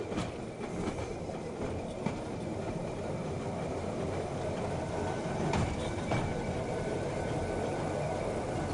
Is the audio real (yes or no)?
yes